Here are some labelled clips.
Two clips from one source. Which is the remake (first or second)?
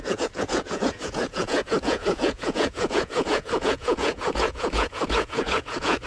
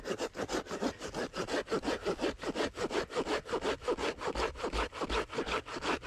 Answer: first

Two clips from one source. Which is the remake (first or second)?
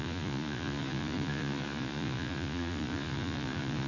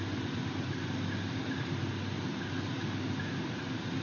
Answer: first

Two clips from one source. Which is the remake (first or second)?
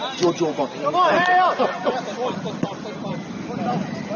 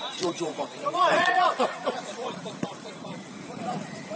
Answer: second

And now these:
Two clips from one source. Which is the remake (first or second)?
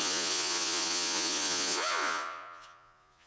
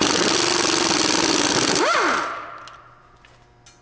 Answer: first